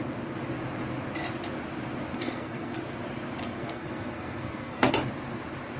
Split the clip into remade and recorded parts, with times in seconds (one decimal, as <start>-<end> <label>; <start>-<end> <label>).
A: 0.0-2.1 recorded; 2.1-2.8 remade; 2.8-3.4 recorded; 3.4-4.9 remade; 4.9-5.8 recorded